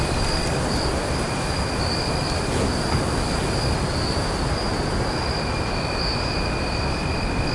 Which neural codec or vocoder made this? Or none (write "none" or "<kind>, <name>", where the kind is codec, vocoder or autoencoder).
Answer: none